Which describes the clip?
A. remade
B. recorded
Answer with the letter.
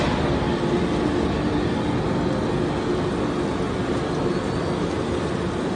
B